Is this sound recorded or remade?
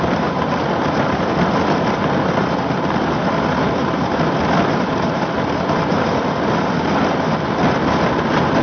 recorded